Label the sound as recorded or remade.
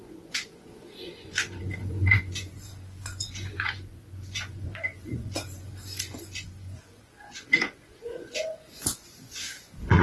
remade